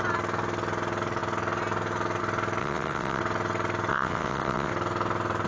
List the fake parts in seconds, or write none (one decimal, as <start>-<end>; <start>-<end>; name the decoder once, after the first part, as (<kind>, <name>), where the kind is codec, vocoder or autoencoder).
2.6-3.2 (vocoder, WaveNeXt); 3.9-4.7